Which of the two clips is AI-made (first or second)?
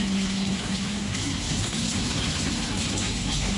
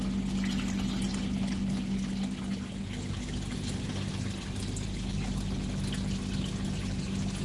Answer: first